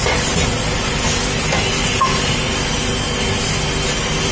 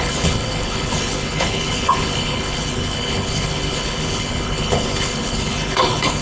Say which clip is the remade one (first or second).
second